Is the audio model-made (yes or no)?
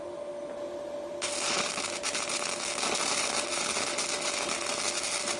no